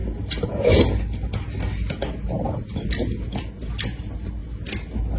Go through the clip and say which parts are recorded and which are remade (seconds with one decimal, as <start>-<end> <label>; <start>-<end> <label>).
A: 0.0-0.5 remade; 0.5-5.2 recorded